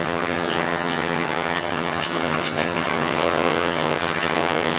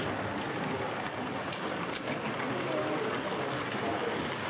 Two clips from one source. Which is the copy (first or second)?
first